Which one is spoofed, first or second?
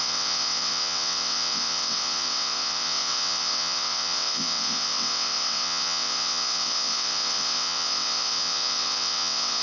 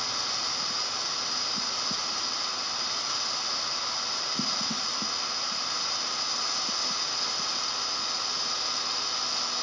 first